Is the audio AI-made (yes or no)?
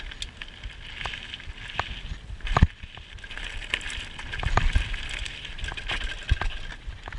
no